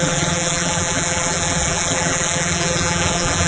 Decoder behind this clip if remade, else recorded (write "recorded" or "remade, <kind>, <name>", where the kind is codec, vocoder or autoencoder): remade, vocoder, BigVGAN v2